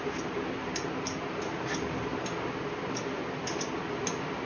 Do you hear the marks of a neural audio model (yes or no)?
no